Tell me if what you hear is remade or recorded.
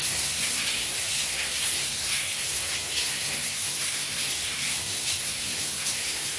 remade